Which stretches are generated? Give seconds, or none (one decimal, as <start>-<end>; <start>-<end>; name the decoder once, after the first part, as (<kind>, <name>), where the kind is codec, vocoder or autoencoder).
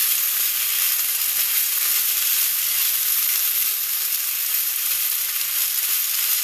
none